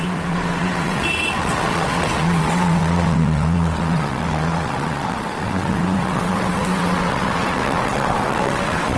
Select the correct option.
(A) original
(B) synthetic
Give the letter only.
B